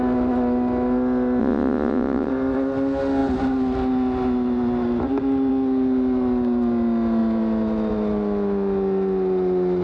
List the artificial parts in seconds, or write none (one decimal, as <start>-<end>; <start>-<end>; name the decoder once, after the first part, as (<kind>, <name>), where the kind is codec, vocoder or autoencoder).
1.4-2.3 (vocoder, Vocos)